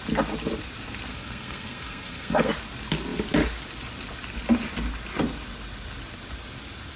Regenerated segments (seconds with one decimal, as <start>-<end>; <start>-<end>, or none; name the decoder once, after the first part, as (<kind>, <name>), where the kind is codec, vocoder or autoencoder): 1.1-2.5 (codec, SNAC)